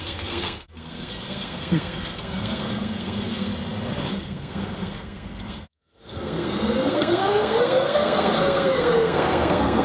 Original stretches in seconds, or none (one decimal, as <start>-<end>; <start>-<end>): 3.5-4.1